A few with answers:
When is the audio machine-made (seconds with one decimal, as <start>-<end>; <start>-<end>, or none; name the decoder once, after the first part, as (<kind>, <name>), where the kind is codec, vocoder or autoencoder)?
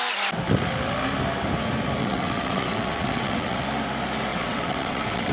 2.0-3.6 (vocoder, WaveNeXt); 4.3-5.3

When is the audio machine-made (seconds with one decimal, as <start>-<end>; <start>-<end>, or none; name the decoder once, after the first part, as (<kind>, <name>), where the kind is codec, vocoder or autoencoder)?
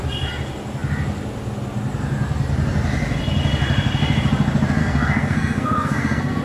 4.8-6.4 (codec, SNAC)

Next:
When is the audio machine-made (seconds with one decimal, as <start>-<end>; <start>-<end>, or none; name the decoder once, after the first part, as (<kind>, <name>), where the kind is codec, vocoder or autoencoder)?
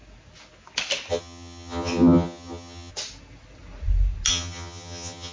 1.1-2.9 (vocoder, HiFi-GAN); 4.3-5.3